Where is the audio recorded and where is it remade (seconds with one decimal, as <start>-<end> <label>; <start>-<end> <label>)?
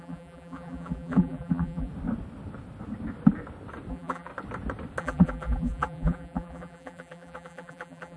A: 0.0-1.9 remade; 1.9-3.9 recorded; 3.9-4.3 remade; 4.3-5.0 recorded; 5.0-8.2 remade